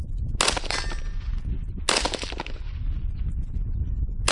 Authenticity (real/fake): real